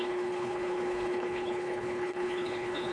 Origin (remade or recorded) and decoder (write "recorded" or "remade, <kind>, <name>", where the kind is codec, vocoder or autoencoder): remade, codec, HILCodec